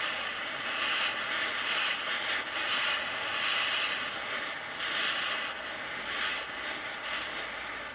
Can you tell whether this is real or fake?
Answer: real